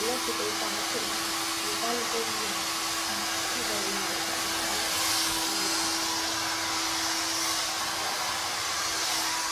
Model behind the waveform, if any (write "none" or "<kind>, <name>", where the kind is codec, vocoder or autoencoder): none